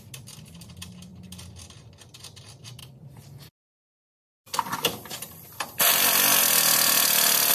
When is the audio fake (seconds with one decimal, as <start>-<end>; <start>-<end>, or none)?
none